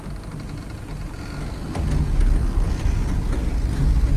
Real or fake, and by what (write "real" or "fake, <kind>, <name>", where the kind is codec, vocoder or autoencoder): real